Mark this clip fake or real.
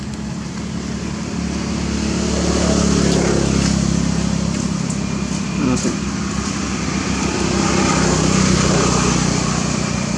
real